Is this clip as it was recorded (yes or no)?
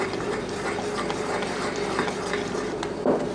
yes